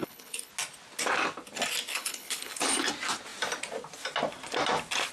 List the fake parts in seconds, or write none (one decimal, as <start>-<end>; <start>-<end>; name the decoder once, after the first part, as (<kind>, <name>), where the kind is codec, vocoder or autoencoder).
0.0-0.5 (codec, HILCodec); 1.9-2.9